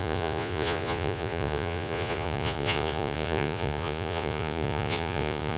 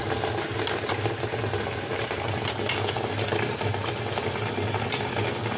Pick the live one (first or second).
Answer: second